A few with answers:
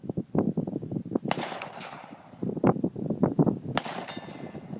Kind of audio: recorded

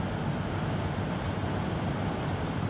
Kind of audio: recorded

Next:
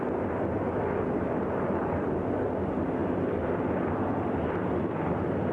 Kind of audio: recorded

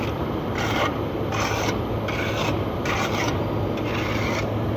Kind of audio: recorded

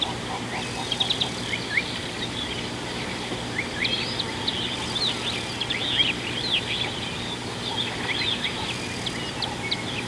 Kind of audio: recorded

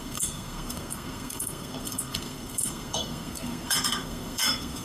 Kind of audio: remade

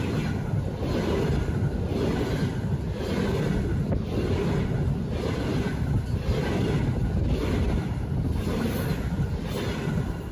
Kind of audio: recorded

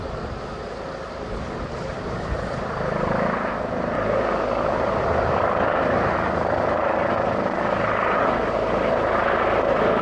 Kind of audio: recorded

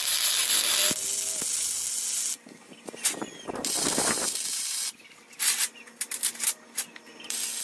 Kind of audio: recorded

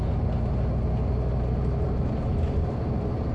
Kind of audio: recorded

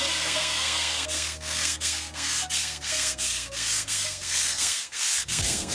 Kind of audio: remade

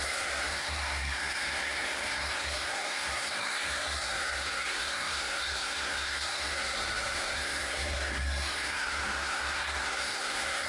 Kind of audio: remade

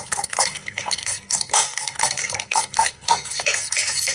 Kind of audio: remade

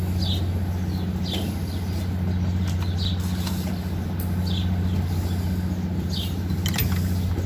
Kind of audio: recorded